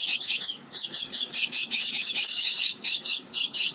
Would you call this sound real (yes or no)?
no